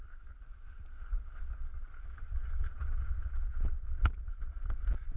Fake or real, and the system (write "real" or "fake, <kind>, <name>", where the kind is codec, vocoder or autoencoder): real